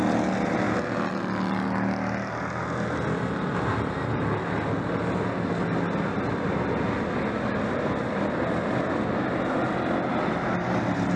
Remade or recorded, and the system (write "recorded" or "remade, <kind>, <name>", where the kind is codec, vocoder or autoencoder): recorded